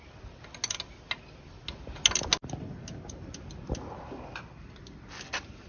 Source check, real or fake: real